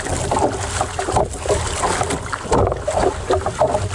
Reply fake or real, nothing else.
real